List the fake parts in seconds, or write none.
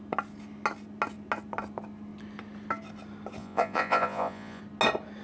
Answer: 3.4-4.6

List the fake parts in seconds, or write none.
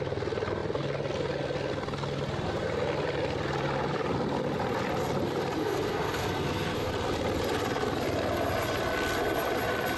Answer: 5.6-6.9